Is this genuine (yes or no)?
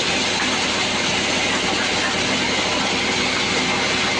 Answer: yes